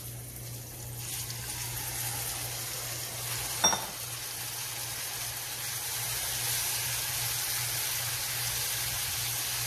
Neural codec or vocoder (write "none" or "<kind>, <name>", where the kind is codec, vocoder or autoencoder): none